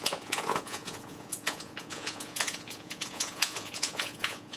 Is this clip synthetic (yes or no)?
yes